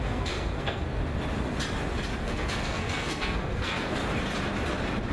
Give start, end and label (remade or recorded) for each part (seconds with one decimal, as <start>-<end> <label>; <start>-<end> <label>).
0.0-1.0 remade; 1.0-2.2 recorded; 2.2-4.0 remade; 4.0-5.1 recorded